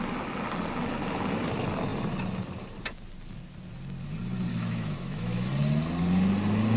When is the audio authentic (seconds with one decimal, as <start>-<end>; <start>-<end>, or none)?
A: 0.0-4.5; 5.5-6.8